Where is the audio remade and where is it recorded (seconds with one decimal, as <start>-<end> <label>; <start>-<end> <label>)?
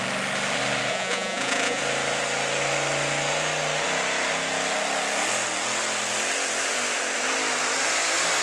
0.0-0.9 recorded; 0.9-1.8 remade; 1.8-8.4 recorded